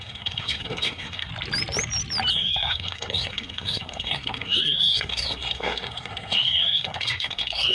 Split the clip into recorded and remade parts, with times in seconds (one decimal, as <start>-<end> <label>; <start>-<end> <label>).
0.0-1.3 remade; 1.3-2.3 recorded; 2.3-7.7 remade